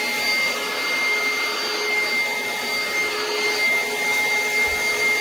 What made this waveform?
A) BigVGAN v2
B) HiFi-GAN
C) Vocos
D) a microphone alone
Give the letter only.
D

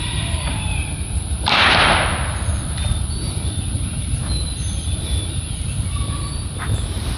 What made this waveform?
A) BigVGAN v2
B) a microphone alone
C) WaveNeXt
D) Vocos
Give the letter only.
A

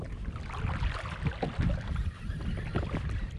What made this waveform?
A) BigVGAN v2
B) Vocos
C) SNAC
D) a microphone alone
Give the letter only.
D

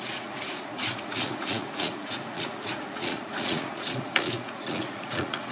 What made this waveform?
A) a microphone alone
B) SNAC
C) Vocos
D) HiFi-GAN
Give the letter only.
C